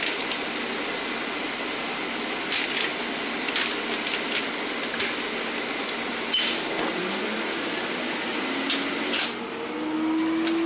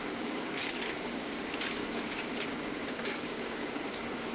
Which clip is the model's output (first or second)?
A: second